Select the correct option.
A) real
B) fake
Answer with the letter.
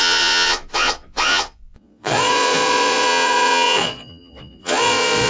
B